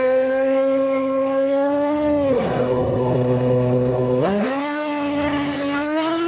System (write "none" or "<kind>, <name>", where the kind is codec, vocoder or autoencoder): codec, SNAC